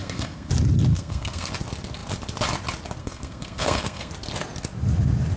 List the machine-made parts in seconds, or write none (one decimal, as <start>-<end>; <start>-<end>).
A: 0.0-0.5; 0.9-1.5; 3.0-4.1